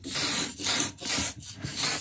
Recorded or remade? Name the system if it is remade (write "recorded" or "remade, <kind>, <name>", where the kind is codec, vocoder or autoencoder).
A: recorded